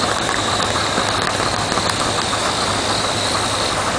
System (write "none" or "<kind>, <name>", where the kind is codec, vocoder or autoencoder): none